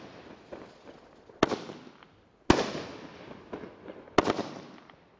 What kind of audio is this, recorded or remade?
recorded